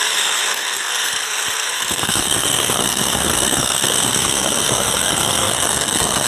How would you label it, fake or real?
fake